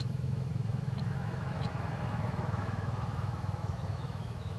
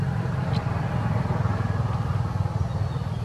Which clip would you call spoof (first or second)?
first